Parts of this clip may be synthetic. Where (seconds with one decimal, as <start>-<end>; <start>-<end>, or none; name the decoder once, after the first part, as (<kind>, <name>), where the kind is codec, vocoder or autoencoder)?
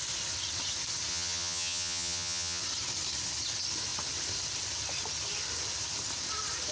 1.1-2.6 (vocoder, HiFi-GAN)